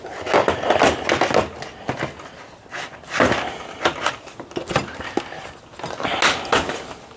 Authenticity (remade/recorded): recorded